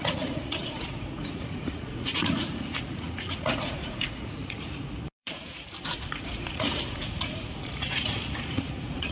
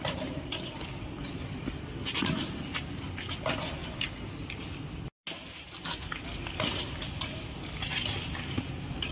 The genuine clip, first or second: second